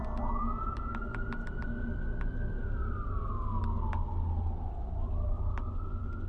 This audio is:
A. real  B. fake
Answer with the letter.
A